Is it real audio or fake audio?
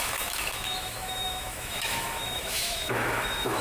fake